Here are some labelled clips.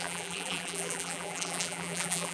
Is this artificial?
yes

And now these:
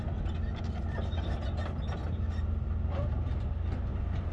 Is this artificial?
no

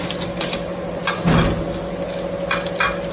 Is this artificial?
no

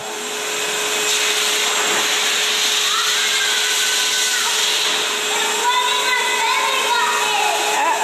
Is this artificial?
no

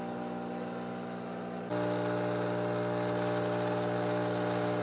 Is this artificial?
no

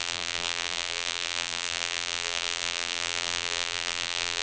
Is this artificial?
yes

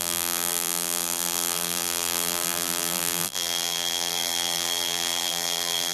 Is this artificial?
yes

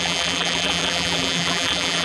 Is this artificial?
yes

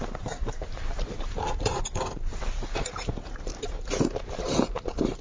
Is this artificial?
yes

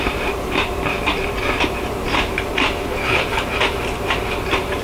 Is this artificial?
yes